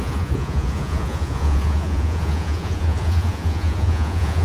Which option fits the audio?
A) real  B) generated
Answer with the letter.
B